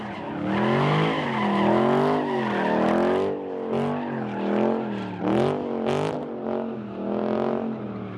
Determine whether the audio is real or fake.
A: real